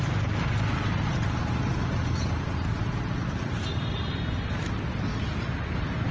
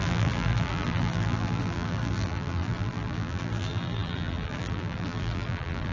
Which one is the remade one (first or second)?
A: second